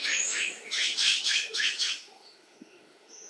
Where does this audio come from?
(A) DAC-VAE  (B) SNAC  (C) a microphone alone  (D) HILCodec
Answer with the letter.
A